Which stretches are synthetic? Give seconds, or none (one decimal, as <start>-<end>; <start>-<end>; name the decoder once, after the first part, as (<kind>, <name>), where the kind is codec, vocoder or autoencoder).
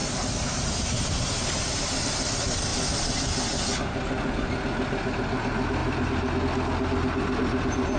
0.0-1.8 (vocoder, BigVGAN v2)